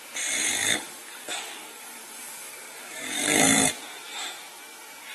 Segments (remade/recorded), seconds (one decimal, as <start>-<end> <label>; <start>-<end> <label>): 0.0-0.6 recorded; 0.6-3.7 remade; 3.7-5.1 recorded